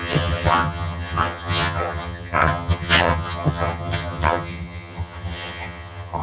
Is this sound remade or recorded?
remade